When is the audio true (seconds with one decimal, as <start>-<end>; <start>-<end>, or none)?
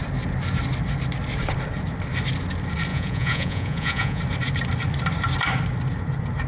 0.0-2.9; 4.2-6.5